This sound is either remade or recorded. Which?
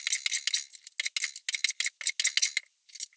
recorded